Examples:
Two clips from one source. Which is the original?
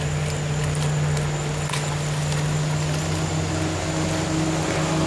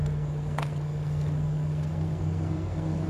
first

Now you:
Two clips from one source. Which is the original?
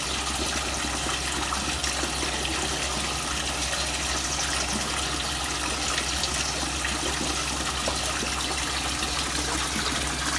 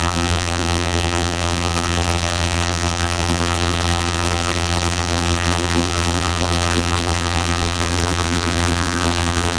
first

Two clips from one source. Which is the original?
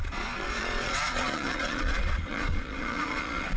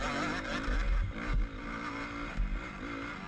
second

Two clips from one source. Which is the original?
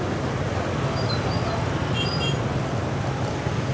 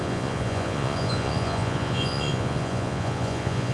first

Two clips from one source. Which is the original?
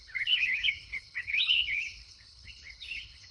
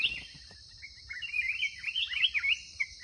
second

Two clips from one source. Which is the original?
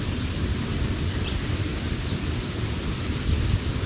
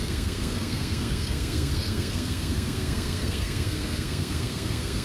first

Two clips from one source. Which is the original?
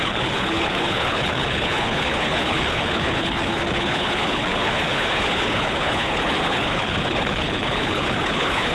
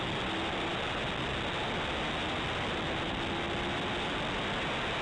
second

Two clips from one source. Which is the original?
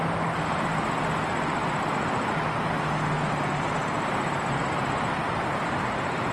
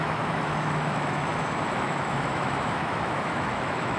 first